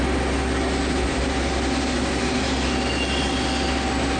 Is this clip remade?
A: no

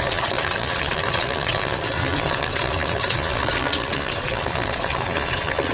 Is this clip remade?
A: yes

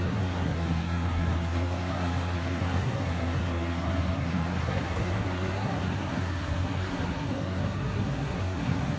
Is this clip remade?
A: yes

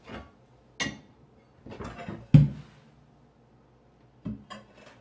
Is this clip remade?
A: no